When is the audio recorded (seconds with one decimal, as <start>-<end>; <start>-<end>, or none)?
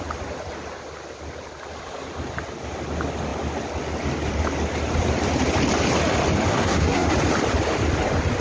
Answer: 0.0-6.5; 7.1-8.4